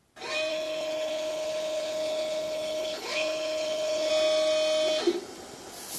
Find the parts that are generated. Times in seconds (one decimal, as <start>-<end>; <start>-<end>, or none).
0.5-4.1